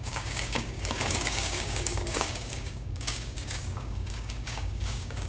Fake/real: fake